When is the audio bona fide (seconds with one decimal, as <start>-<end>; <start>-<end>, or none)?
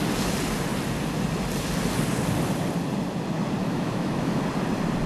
0.0-3.6; 4.4-5.1